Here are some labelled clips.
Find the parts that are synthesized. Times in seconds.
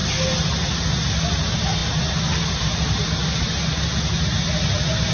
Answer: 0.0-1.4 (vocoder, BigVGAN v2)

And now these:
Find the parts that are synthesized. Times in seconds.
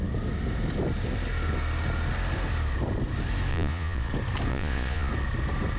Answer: 3.5-4.1 (vocoder, Vocos); 4.5-5.1